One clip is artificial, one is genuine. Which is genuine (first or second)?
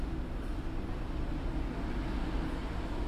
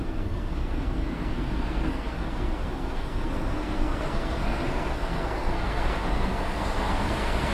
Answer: first